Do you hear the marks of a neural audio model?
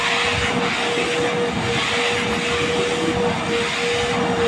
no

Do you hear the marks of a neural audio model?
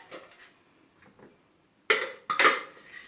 no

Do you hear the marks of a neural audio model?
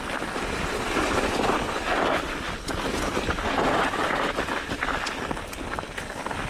no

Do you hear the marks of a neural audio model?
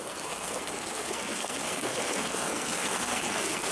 yes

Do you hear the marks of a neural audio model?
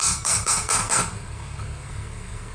yes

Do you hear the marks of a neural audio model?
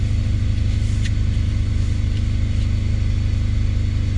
no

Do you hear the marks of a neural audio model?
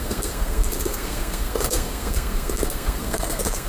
yes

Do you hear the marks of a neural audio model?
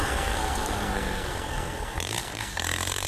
yes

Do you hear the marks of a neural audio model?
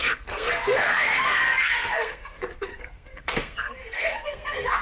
yes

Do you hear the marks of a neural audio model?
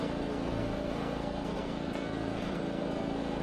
yes